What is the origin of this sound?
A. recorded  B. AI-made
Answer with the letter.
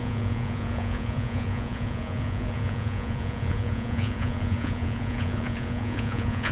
B